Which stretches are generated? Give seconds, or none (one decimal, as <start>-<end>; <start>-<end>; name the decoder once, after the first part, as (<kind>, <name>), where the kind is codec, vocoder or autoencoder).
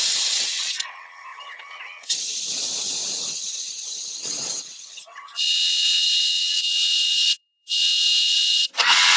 0.0-9.2 (vocoder, WaveNeXt)